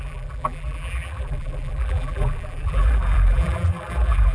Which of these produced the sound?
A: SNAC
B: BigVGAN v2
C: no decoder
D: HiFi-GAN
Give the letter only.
B